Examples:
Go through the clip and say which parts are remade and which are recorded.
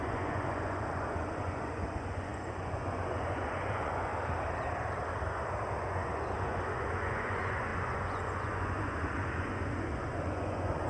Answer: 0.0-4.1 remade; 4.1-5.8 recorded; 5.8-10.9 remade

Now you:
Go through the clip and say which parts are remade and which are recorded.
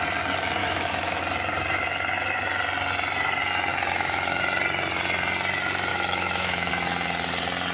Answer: 0.0-0.6 recorded; 0.6-1.2 remade; 1.2-3.7 recorded; 3.7-4.4 remade; 4.4-5.9 recorded; 5.9-6.7 remade; 6.7-7.7 recorded